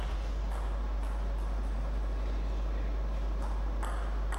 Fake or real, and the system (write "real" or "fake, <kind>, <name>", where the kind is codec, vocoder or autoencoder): real